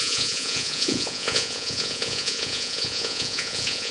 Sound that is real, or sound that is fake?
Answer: fake